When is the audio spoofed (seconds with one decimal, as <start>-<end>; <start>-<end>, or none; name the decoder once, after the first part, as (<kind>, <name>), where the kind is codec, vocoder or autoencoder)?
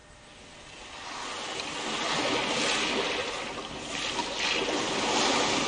none